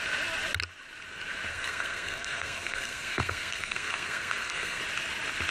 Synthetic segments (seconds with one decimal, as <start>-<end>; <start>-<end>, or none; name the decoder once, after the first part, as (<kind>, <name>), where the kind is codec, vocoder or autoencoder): 1.5-4.8 (codec, SNAC)